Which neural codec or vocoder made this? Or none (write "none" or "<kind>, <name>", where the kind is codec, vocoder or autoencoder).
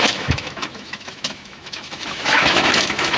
autoencoder, DAC-VAE